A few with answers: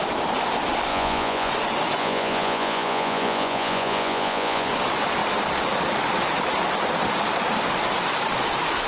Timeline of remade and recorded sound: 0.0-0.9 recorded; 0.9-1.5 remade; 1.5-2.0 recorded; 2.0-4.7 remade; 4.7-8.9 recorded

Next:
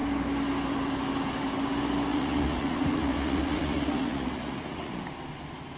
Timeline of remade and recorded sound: 0.0-2.1 recorded; 2.1-5.0 remade; 5.0-5.8 recorded